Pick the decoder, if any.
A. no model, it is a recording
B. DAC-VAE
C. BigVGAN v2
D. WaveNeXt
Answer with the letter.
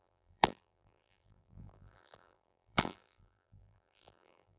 C